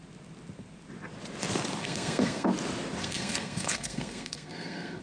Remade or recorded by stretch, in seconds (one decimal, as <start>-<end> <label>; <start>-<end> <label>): 0.0-1.8 recorded; 1.8-2.5 remade; 2.5-3.0 recorded; 3.0-5.0 remade